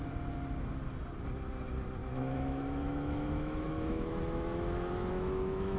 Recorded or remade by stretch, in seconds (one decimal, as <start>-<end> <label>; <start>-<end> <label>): 0.0-2.0 recorded; 2.0-5.8 remade